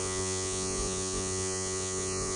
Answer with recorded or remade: remade